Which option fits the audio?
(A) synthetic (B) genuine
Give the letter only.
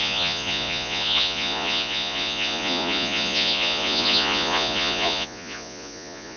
A